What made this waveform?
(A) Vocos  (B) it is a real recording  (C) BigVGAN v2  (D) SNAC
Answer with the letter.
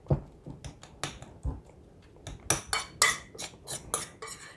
B